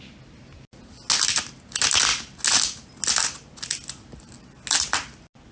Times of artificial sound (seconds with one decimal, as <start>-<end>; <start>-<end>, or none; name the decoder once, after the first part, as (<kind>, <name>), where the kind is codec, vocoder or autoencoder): none